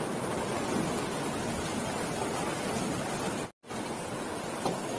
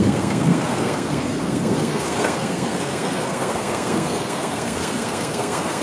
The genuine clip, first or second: first